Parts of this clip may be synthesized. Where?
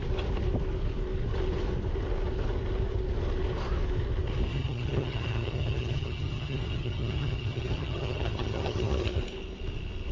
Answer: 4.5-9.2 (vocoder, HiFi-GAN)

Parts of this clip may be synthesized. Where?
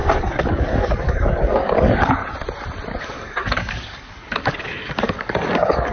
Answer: 0.0-2.2 (codec, DAC); 3.0-5.9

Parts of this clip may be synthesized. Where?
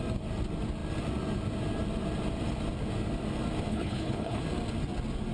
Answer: 3.7-4.4 (codec, HILCodec)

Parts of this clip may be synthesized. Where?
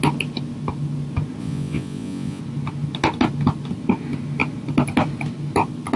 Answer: 1.4-2.4 (vocoder, Vocos)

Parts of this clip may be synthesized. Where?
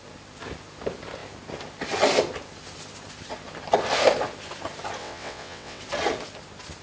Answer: 5.0-5.8 (vocoder, WaveNeXt)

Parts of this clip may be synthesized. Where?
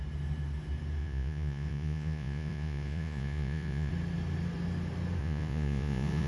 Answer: 1.0-3.9 (vocoder, Vocos); 5.2-6.3